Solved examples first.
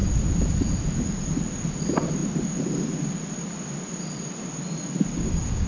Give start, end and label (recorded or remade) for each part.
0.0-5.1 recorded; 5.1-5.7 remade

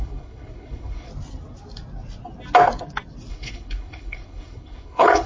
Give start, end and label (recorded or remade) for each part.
0.0-1.1 remade; 1.1-3.3 recorded; 3.3-5.3 remade

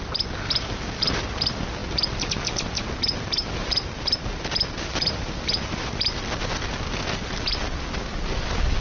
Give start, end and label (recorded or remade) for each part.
0.0-8.8 recorded

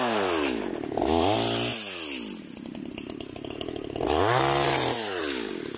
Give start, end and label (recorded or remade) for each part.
0.0-5.8 recorded

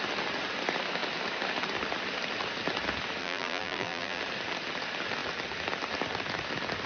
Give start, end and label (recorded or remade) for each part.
0.0-3.2 recorded; 3.2-4.2 remade; 4.2-6.9 recorded

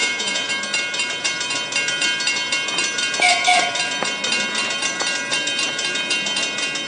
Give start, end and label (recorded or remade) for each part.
0.0-0.5 remade; 0.5-6.9 recorded

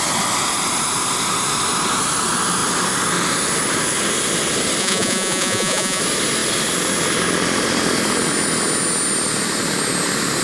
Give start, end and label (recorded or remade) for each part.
0.0-4.8 recorded; 4.8-6.0 remade; 6.0-10.4 recorded

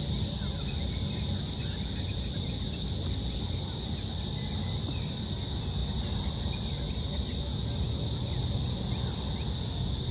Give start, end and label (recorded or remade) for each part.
0.0-10.1 recorded